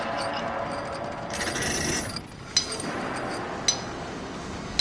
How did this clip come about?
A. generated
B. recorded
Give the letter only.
B